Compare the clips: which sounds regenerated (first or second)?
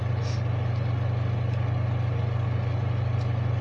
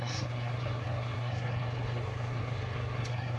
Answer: second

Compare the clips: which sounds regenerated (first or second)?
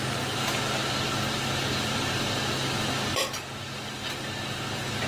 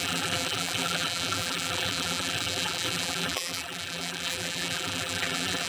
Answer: second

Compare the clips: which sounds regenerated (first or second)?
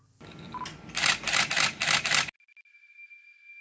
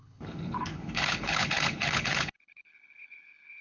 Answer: second